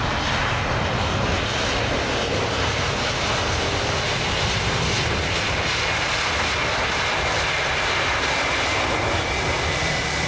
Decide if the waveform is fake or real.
real